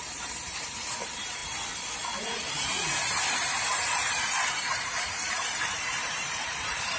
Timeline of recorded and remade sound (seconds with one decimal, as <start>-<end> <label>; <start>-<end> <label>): 0.0-1.4 remade; 1.4-3.3 recorded; 3.3-7.0 remade